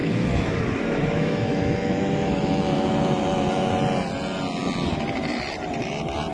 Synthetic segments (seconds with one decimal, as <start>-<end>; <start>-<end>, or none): 0.0-3.7